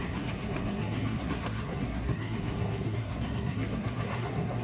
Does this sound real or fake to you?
fake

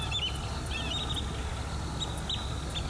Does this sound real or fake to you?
real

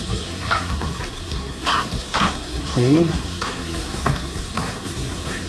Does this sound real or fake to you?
fake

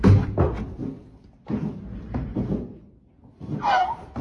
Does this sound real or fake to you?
real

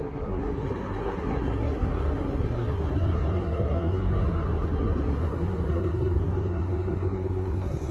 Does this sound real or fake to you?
fake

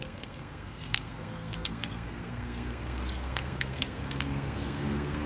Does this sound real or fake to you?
fake